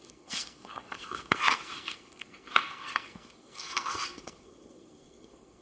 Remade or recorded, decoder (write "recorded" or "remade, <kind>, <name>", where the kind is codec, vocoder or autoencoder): remade, codec, SNAC